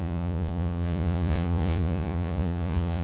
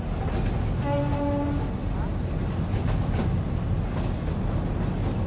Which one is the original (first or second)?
second